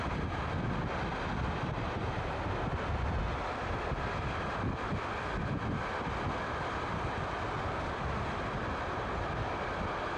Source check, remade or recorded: recorded